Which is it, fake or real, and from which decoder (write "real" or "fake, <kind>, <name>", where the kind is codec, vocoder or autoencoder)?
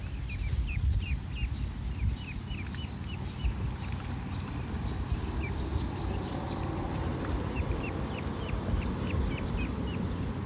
real